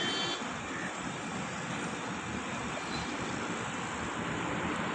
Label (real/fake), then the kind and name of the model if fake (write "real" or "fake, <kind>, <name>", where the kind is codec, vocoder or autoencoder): real